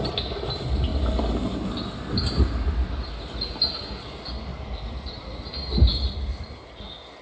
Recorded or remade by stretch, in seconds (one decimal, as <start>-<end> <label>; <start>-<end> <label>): 0.0-7.2 recorded